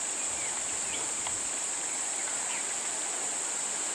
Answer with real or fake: real